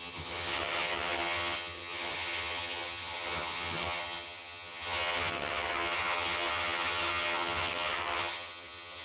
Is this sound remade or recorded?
remade